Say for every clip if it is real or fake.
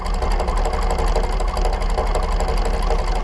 real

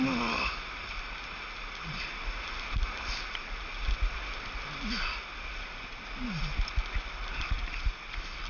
real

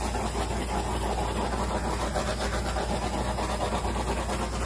real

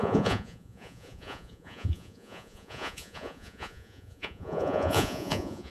fake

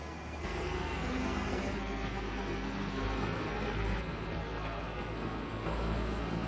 fake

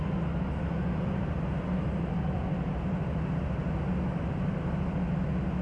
real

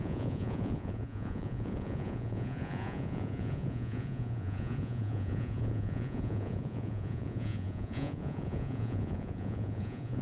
fake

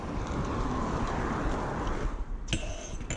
real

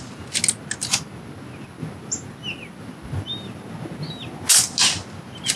real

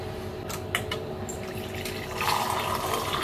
real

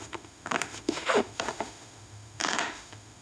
fake